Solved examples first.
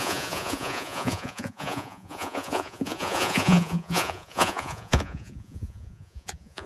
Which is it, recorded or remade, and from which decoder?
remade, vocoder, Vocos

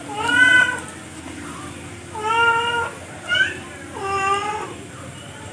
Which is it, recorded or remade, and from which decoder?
recorded